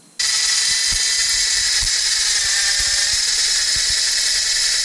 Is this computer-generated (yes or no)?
no